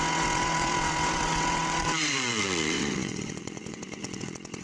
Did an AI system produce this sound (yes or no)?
yes